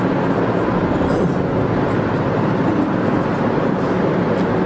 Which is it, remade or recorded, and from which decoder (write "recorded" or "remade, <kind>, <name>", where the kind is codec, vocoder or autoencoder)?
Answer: recorded